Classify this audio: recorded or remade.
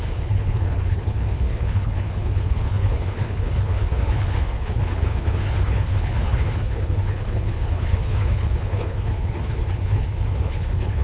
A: remade